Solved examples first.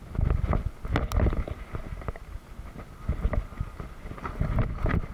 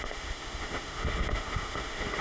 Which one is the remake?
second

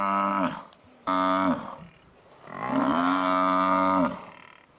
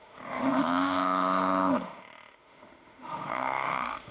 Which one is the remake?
second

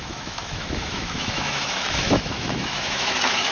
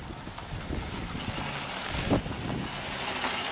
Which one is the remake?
first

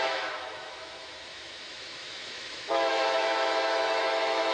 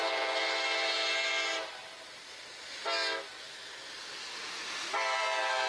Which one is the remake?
first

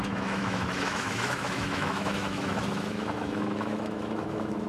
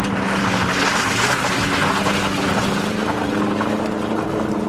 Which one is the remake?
first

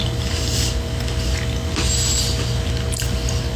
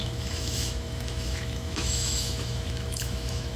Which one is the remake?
second